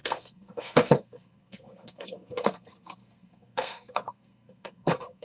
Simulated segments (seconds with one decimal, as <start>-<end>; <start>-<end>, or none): 0.0-5.2